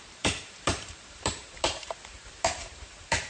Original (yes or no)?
no